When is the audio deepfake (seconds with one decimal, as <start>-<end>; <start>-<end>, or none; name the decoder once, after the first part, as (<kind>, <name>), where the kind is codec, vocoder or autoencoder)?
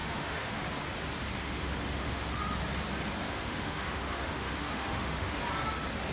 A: 0.0-0.6 (autoencoder, DAC-VAE); 1.4-2.6; 3.2-5.4